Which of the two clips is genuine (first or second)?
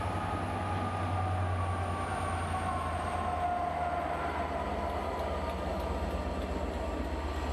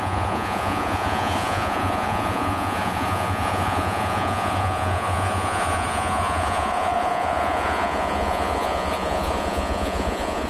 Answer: first